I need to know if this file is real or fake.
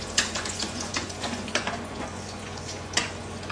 fake